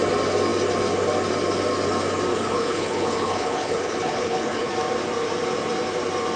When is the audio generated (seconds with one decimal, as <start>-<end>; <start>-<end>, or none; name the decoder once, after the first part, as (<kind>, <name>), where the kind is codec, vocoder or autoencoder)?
2.3-4.7 (codec, HILCodec)